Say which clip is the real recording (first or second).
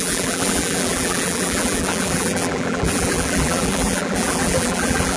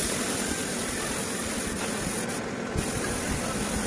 second